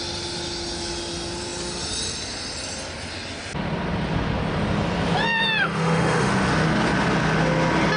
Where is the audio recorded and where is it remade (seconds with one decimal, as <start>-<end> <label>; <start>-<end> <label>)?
0.0-5.6 recorded; 5.6-6.3 remade; 6.3-8.0 recorded